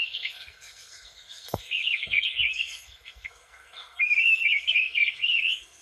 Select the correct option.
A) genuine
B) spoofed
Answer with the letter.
B